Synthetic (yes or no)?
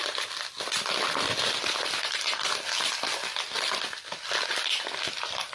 no